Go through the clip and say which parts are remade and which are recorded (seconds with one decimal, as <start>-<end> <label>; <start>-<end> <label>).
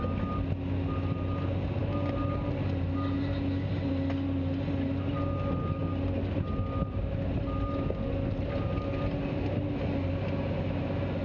0.0-11.2 recorded